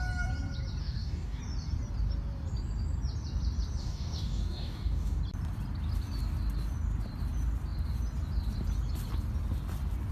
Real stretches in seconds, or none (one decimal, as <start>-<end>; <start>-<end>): 0.0-0.8; 1.4-3.8; 5.2-10.1